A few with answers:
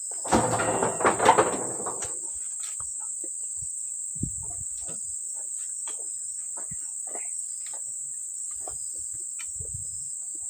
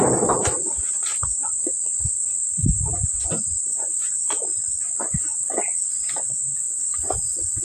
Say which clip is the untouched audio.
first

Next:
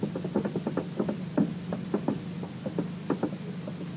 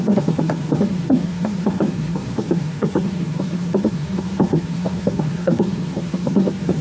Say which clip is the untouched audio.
first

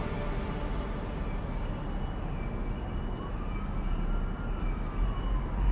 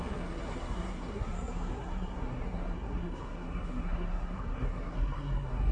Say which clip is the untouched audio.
first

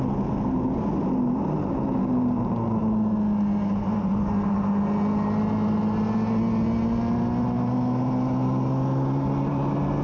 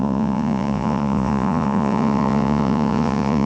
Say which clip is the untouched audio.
first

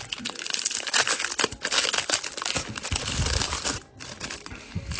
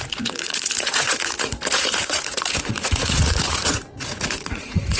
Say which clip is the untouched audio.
first